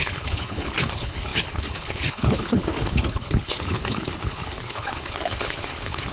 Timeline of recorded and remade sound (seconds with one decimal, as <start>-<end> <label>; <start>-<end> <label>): 0.0-6.1 remade